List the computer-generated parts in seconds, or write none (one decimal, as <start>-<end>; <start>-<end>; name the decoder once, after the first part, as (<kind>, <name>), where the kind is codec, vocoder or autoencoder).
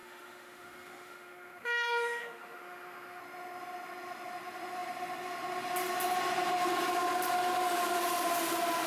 0.0-3.2 (autoencoder, DAC-VAE)